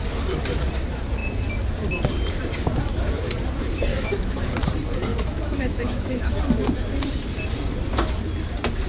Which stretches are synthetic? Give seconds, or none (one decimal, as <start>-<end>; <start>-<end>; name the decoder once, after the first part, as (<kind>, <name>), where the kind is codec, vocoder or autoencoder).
3.9-4.4 (autoencoder, DAC-VAE); 5.1-6.4